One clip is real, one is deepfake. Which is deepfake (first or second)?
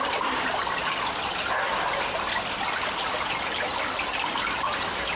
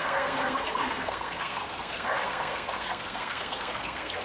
second